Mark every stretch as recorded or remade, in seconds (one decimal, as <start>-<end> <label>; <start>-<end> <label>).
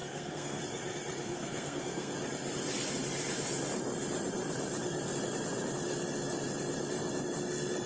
0.0-0.6 remade; 0.6-1.2 recorded; 1.2-2.1 remade; 2.1-7.9 recorded